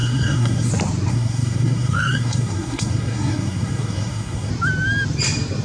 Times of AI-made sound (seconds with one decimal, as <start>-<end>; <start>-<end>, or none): 0.0-0.7; 1.1-4.5